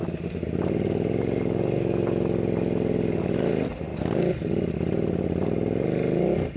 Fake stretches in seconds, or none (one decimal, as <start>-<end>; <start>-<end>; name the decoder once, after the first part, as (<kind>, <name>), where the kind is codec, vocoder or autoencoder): none